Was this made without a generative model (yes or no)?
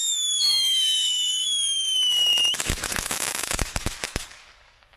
no